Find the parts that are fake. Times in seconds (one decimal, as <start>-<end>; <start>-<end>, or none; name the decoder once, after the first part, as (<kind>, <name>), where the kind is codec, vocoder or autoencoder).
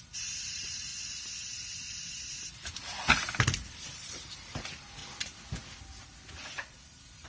0.0-0.9 (vocoder, BigVGAN v2); 3.7-5.0; 6.7-7.3